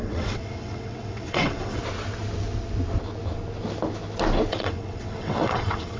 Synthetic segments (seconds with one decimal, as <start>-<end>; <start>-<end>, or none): 0.0-1.8; 4.5-6.0